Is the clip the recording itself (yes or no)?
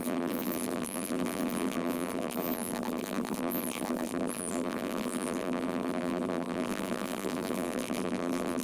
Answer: no